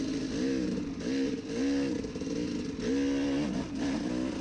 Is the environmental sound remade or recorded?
recorded